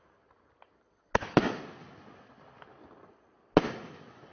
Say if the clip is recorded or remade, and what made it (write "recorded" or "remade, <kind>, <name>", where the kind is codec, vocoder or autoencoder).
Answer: recorded